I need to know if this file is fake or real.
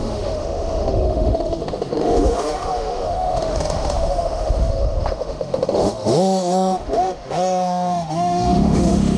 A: fake